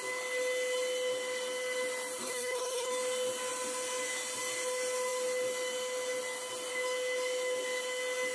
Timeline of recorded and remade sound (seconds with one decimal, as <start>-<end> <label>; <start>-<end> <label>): 0.0-2.2 recorded; 2.2-2.9 remade; 2.9-8.3 recorded